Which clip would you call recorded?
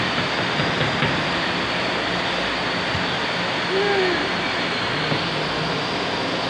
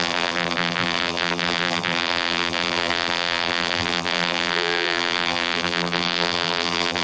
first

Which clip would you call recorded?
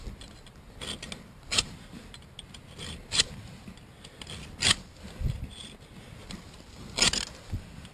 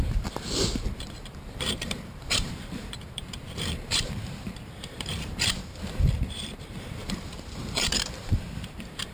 first